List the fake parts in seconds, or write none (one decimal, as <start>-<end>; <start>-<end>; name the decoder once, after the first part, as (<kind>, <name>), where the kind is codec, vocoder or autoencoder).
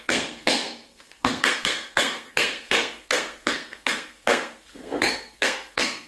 0.0-6.1 (codec, SNAC)